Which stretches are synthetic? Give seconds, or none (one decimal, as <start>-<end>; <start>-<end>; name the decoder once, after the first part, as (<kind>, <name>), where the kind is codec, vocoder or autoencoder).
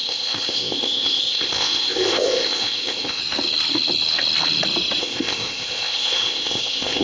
0.0-3.2 (codec, ZipCodec); 5.0-7.0